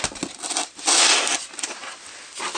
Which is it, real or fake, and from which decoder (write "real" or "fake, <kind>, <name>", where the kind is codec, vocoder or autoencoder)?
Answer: real